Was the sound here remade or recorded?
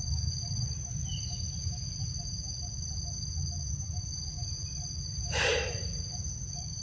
remade